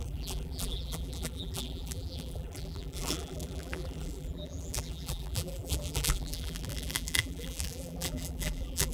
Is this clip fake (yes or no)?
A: yes